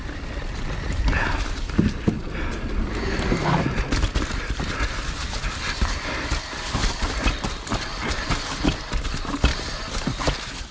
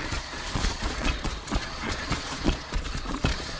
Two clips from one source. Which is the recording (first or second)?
first